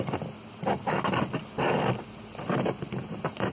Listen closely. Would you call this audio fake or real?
real